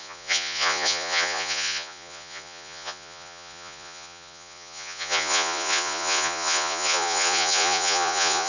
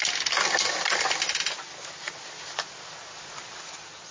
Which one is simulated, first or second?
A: first